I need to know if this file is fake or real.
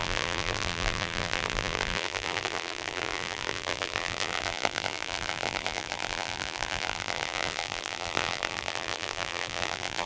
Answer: fake